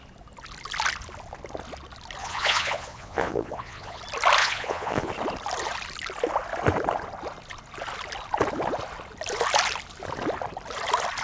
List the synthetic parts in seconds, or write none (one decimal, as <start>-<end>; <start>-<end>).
2.2-4.0; 4.4-5.1